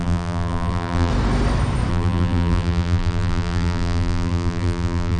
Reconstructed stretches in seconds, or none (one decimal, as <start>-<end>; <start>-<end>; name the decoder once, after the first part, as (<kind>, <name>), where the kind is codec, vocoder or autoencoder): 0.0-1.1 (vocoder, BigVGAN v2); 1.9-5.2